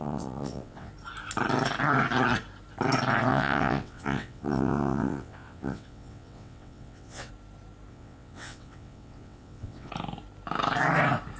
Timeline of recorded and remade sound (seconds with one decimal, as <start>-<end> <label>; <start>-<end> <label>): 0.0-0.9 remade; 0.9-3.3 recorded; 3.3-7.3 remade; 7.3-7.9 recorded; 7.9-9.9 remade; 9.9-11.4 recorded